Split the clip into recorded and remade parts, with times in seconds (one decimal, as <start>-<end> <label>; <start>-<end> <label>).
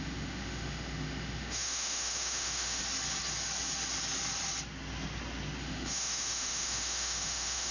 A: 0.0-2.8 remade; 2.8-5.6 recorded; 5.6-7.7 remade